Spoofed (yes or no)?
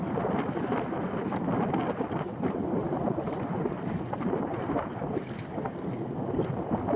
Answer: no